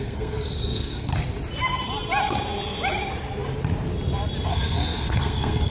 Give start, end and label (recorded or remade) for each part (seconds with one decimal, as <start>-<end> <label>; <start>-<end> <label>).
0.0-1.1 remade; 1.1-4.5 recorded; 4.5-5.7 remade